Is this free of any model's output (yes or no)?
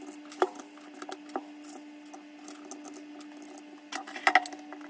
yes